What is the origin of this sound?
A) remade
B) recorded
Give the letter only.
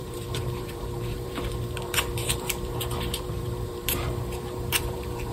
A